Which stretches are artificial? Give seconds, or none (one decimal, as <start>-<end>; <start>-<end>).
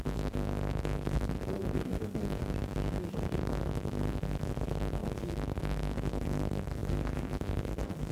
0.0-2.4; 3.1-8.1